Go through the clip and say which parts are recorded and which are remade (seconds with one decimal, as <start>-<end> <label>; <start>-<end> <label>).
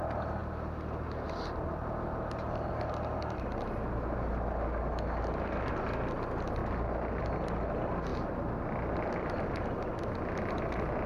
0.0-11.1 recorded